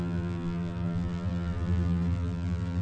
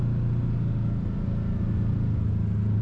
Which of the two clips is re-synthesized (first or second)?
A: first